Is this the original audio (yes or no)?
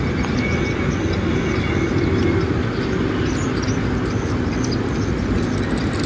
yes